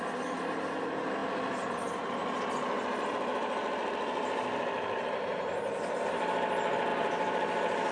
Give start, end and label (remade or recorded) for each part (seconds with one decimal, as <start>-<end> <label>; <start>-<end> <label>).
0.0-7.9 recorded

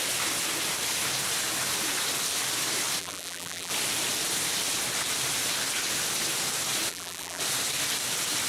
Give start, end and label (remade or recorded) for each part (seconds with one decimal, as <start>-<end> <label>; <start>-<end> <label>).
0.0-3.0 recorded; 3.0-3.7 remade; 3.7-6.9 recorded; 6.9-7.4 remade; 7.4-8.5 recorded

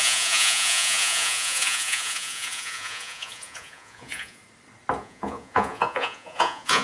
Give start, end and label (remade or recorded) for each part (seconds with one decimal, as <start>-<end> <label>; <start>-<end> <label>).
0.0-4.4 remade; 4.4-5.0 recorded; 5.0-6.8 remade

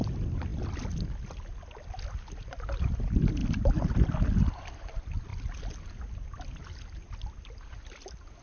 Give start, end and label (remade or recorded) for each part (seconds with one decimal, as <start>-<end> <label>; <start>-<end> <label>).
0.0-8.4 recorded

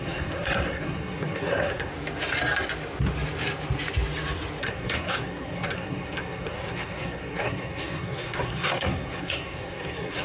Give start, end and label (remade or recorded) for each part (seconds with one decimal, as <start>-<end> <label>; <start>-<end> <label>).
0.0-1.9 remade; 1.9-4.6 recorded; 4.6-10.2 remade